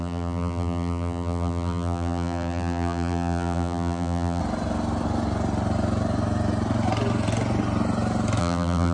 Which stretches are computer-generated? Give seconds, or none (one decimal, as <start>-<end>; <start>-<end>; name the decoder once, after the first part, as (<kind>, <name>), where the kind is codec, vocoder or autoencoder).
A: 0.0-4.4 (vocoder, BigVGAN v2); 8.4-8.9